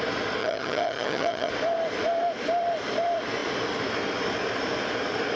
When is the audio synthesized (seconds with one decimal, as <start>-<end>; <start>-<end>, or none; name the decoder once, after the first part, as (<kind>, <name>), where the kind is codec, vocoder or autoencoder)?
0.4-1.5 (vocoder, HiFi-GAN)